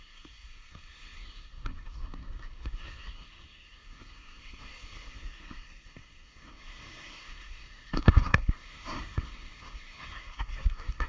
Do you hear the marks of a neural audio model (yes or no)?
yes